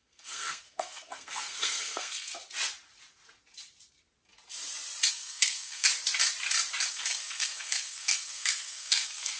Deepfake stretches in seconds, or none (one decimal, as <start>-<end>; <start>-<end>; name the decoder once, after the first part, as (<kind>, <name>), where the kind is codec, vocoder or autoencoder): 0.0-2.3 (codec, SNAC); 5.1-5.9; 6.9-9.4